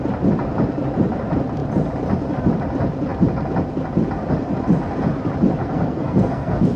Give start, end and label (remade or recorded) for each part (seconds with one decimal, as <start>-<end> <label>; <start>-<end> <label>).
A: 0.0-5.6 recorded; 5.6-6.8 remade